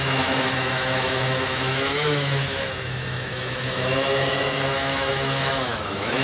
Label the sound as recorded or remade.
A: remade